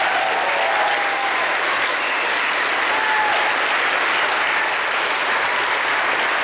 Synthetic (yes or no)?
no